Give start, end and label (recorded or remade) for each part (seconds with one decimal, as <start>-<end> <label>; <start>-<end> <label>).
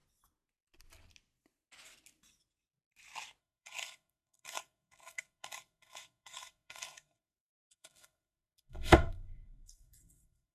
0.0-3.4 recorded; 3.4-10.5 remade